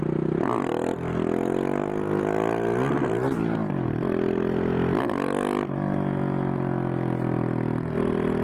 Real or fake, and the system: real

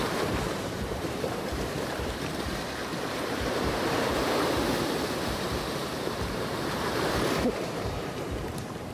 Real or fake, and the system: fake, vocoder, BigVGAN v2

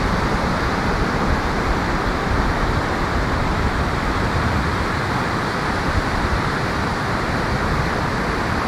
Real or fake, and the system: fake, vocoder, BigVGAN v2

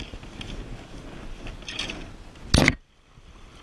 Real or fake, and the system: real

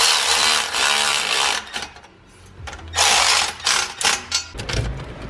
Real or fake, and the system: real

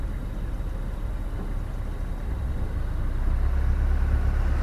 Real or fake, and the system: real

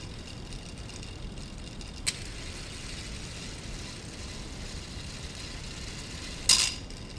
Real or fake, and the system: real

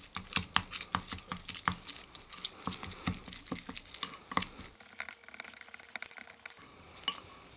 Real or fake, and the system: real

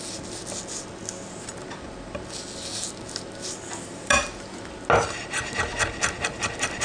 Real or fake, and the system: real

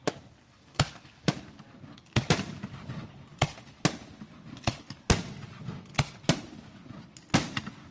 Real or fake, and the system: real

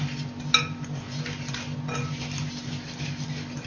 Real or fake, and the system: real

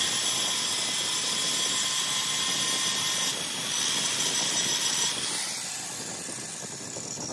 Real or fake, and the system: real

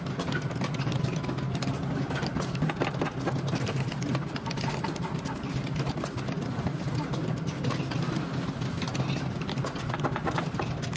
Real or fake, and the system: real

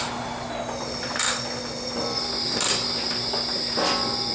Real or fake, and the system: real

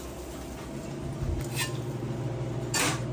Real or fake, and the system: real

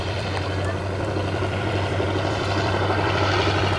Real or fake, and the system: fake, vocoder, BigVGAN v2